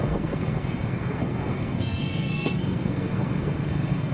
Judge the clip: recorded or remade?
remade